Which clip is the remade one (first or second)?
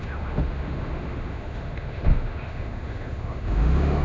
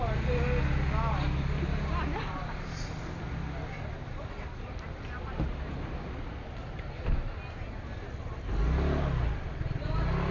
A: first